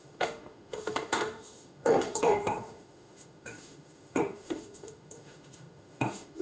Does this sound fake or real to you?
fake